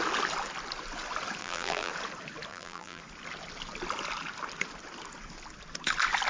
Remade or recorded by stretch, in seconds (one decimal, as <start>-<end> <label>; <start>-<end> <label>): 0.0-1.4 recorded; 1.4-1.9 remade; 1.9-2.5 recorded; 2.5-3.0 remade; 3.0-6.3 recorded